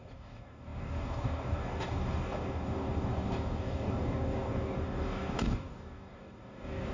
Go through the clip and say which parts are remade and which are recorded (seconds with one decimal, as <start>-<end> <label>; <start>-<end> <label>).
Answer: 0.0-6.9 remade